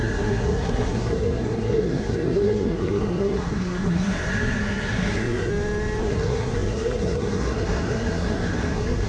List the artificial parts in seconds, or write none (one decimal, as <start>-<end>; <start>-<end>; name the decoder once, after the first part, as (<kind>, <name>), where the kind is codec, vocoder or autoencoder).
0.0-5.5 (codec, SNAC); 6.0-9.1